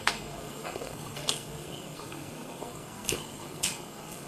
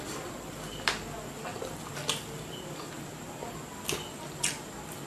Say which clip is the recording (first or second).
second